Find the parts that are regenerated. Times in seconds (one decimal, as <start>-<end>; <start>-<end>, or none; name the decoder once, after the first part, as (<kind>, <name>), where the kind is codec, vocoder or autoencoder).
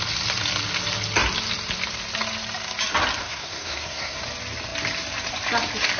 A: 3.2-4.2 (codec, SNAC)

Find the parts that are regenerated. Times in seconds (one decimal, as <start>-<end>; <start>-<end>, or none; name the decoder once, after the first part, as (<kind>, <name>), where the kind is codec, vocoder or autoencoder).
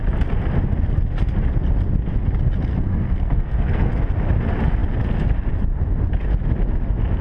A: 2.7-3.9 (codec, SNAC)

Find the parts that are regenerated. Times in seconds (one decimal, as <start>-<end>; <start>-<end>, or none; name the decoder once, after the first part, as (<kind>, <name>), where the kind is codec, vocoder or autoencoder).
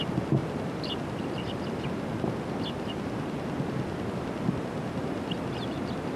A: none